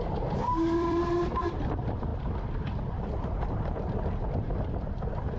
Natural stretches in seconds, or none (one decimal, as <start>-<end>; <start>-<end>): none

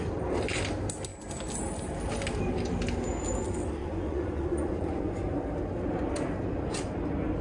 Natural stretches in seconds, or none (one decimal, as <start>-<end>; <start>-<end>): 0.0-3.8; 5.2-7.4

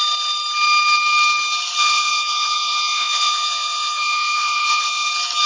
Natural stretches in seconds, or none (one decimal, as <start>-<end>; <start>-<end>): 0.0-1.8; 5.1-5.5

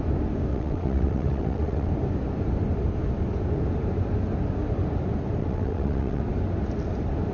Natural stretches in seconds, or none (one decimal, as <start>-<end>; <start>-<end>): 0.0-0.5; 1.9-5.4; 6.2-7.3

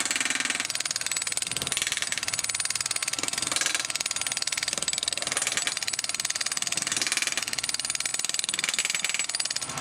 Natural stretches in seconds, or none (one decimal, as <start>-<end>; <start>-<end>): 0.0-9.8